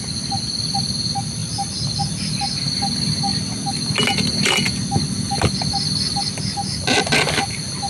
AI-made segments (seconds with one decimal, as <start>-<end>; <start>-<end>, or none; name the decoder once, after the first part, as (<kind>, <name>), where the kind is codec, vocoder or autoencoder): none